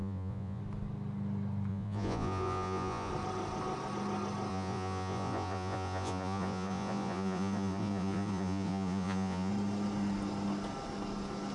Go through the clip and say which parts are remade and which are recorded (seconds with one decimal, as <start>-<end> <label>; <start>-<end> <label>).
0.0-0.6 remade; 0.6-1.7 recorded; 1.7-3.1 remade; 3.1-4.5 recorded; 4.5-9.5 remade; 9.5-11.5 recorded